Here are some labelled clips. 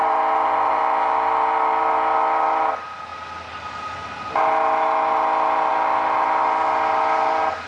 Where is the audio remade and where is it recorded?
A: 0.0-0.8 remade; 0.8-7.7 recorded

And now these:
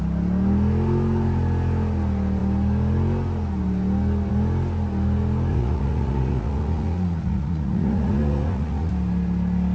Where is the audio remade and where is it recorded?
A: 0.0-5.5 recorded; 5.5-8.9 remade; 8.9-9.7 recorded

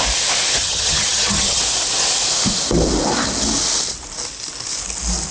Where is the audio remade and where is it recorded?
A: 0.0-0.6 recorded; 0.6-1.6 remade; 1.6-5.3 recorded

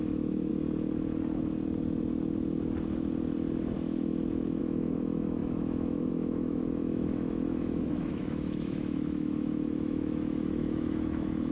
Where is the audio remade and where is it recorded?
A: 0.0-0.5 remade; 0.5-4.6 recorded; 4.6-11.5 remade

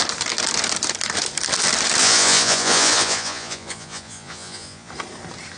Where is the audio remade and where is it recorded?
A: 0.0-2.0 recorded; 2.0-4.9 remade; 4.9-5.6 recorded

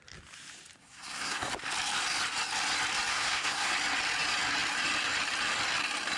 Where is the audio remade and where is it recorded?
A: 0.0-0.8 recorded; 0.8-1.5 remade; 1.5-3.1 recorded; 3.1-3.7 remade; 3.7-6.2 recorded